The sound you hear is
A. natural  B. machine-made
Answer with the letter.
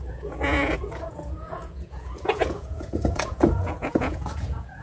B